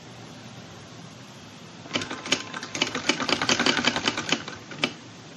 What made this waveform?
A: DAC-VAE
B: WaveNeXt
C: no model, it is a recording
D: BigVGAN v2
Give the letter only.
D